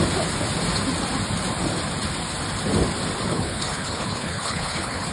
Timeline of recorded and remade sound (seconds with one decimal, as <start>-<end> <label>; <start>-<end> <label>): 0.0-3.3 recorded; 3.3-5.1 remade